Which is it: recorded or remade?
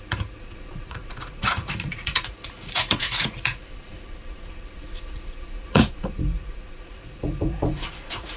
remade